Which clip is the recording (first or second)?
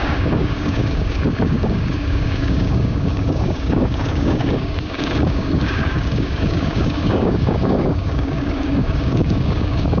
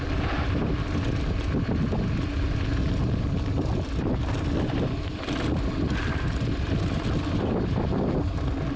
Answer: second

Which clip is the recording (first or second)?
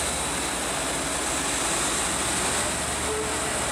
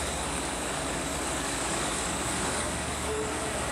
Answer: first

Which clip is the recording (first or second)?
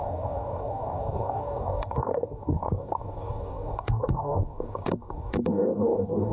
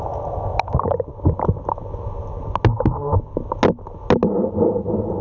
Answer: second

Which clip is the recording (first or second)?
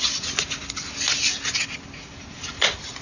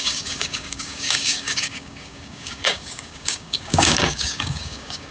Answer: first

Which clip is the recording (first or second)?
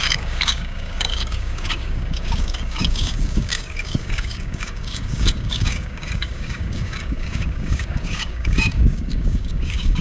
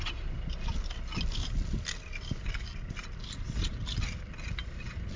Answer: second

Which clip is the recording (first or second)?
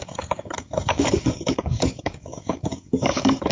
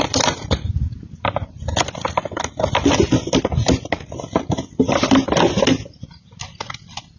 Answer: second